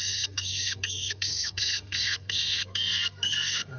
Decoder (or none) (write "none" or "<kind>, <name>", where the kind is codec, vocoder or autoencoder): codec, SNAC